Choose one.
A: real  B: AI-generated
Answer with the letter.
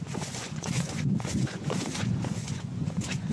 B